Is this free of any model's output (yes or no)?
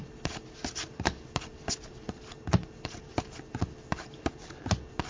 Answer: yes